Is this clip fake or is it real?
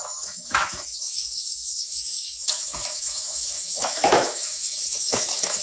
fake